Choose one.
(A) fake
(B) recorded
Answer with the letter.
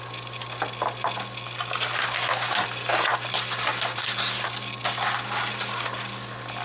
B